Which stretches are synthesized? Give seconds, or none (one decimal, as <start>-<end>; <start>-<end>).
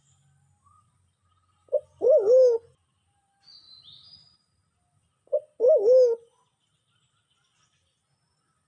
none